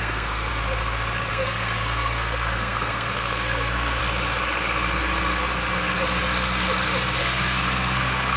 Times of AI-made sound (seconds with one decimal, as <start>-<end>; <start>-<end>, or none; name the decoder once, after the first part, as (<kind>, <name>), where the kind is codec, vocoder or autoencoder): 0.0-0.5 (codec, SNAC); 1.3-4.0; 7.2-8.4